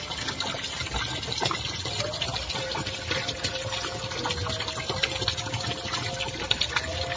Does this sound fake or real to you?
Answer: real